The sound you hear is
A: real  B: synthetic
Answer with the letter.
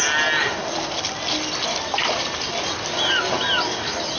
A